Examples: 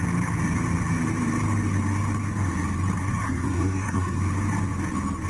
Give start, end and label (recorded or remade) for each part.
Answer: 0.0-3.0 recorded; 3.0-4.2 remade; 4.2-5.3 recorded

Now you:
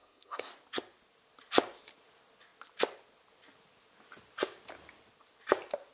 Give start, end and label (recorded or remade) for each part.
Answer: 0.0-0.5 remade; 0.5-5.9 recorded